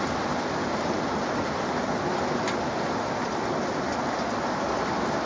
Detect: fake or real real